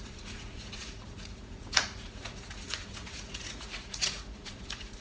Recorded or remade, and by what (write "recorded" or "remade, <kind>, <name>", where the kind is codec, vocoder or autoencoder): remade, vocoder, Vocos